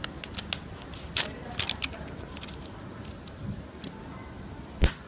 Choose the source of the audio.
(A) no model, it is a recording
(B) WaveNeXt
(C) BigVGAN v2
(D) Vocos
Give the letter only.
A